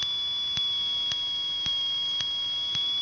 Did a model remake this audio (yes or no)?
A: no